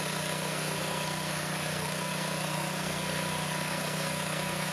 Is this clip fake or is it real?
fake